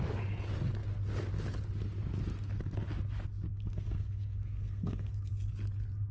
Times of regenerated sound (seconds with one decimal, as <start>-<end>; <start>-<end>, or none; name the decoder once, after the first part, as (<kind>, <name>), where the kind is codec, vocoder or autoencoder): 3.5-5.3 (codec, SNAC)